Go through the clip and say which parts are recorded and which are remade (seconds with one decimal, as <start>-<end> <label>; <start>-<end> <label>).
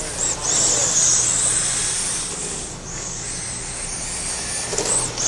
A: 0.0-2.4 recorded; 2.4-3.3 remade; 3.3-5.3 recorded